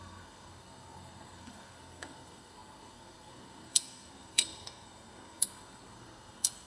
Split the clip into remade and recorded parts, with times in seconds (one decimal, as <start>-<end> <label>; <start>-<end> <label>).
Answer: 0.0-6.7 remade